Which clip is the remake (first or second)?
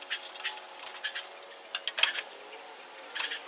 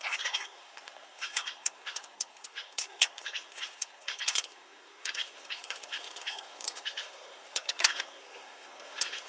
second